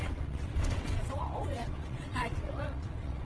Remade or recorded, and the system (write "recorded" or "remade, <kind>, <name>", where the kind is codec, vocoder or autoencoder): remade, vocoder, WaveNeXt